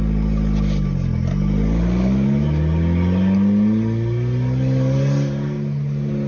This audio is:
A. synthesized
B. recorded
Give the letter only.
B